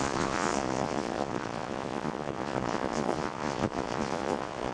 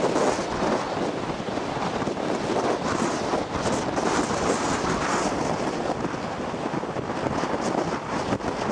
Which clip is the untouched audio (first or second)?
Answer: second